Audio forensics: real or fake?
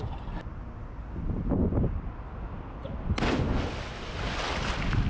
real